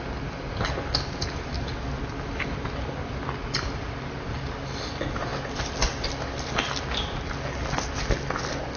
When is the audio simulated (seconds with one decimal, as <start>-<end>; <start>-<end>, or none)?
none